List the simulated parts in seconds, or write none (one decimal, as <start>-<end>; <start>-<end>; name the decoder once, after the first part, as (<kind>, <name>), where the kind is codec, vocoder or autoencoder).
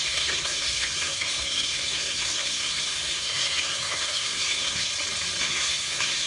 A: 0.0-4.9 (codec, SNAC); 5.4-6.3